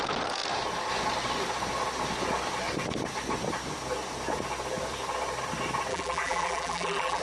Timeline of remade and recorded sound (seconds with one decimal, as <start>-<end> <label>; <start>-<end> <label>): 0.0-5.9 recorded; 5.9-7.2 remade